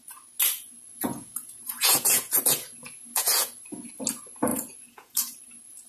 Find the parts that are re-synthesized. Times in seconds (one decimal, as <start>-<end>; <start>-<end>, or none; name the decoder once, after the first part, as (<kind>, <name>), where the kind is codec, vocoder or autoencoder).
0.9-3.9 (vocoder, Vocos); 4.5-5.9